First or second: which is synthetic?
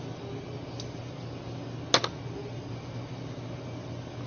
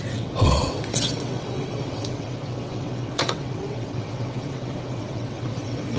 second